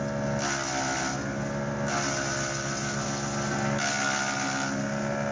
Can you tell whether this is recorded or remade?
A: recorded